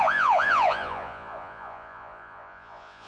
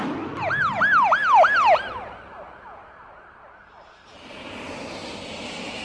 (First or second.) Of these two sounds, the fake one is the first